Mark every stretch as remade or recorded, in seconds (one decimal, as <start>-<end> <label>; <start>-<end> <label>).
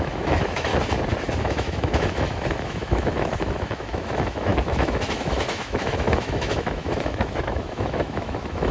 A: 0.0-0.7 remade; 0.7-1.4 recorded; 1.4-8.7 remade